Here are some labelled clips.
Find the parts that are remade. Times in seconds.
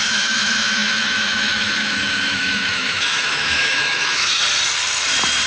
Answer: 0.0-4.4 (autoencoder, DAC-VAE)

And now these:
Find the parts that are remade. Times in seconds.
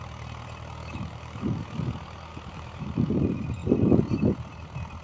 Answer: 0.8-1.6 (autoencoder, DAC-VAE); 2.3-3.1